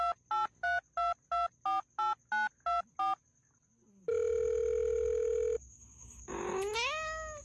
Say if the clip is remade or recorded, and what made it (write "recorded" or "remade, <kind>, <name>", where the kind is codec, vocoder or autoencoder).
recorded